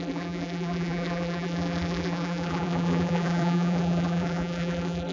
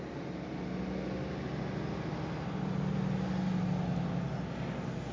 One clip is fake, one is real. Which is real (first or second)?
second